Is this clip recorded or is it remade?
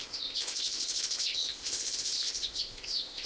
remade